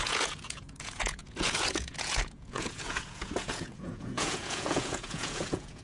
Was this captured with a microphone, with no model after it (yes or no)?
no